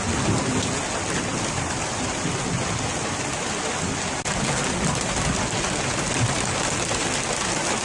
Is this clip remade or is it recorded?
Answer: recorded